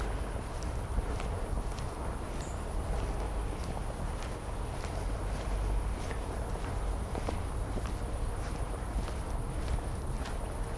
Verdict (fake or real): real